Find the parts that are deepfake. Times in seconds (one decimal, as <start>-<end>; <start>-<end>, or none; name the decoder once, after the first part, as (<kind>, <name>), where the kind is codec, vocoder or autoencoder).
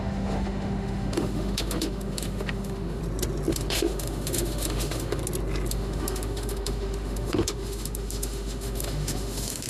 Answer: 0.0-3.0 (autoencoder, DAC-VAE); 3.5-5.2; 5.7-9.7